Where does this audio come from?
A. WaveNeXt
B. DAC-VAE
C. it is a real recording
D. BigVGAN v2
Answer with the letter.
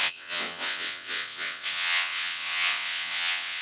A